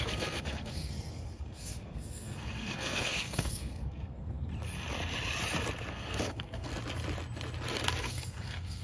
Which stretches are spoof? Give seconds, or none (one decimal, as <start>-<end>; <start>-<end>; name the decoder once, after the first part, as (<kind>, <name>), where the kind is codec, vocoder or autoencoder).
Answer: 0.0-4.5 (codec, SNAC); 5.9-6.7; 8.0-8.8